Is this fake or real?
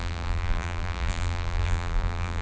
fake